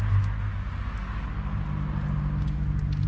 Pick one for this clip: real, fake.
real